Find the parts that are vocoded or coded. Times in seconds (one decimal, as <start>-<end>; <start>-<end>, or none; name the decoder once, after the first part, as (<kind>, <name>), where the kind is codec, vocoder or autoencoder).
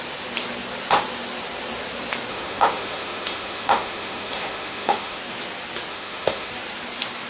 2.3-5.2 (autoencoder, DAC-VAE); 5.9-6.5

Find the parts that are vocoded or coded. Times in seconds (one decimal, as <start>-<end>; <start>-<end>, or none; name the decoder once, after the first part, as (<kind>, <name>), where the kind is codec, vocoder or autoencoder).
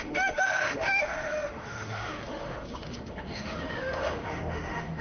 0.0-5.0 (autoencoder, DAC-VAE)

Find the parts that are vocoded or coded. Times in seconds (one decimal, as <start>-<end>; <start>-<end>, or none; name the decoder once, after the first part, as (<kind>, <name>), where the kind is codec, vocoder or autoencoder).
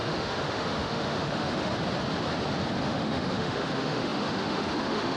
0.0-1.7 (autoencoder, DAC-VAE); 2.8-5.2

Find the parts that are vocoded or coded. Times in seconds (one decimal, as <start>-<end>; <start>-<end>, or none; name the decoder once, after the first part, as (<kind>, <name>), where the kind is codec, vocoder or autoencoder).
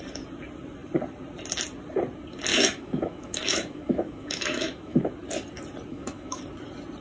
2.5-5.1 (autoencoder, DAC-VAE); 5.9-6.4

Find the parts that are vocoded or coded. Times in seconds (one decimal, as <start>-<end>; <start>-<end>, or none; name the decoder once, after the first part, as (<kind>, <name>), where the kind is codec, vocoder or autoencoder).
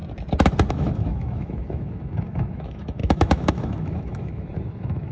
0.7-5.1 (autoencoder, DAC-VAE)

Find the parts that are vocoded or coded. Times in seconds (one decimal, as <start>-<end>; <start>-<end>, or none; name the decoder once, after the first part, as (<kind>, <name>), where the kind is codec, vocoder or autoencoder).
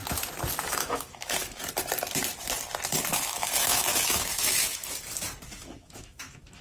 0.7-1.6 (autoencoder, DAC-VAE); 3.1-4.8; 5.5-6.6